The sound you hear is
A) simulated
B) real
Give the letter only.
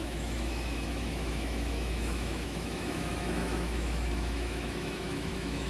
A